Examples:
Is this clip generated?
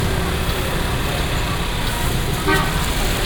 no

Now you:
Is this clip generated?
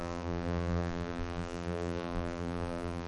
yes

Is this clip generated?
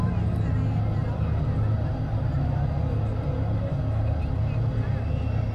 no